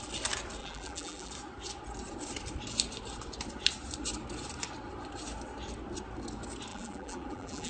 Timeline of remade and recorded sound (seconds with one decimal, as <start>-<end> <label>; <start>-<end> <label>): 0.0-0.6 recorded; 0.6-1.3 remade; 1.3-6.7 recorded; 6.7-7.7 remade

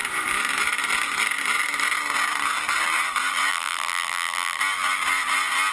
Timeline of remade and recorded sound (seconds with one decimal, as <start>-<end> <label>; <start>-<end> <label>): 0.0-3.5 recorded; 3.5-4.6 remade; 4.6-5.7 recorded

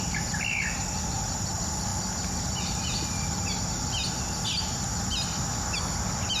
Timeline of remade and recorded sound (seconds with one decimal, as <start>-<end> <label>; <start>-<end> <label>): 0.0-6.4 recorded